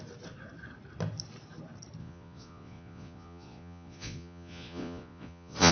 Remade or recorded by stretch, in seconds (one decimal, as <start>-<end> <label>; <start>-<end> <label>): 0.0-2.0 recorded; 2.0-5.7 remade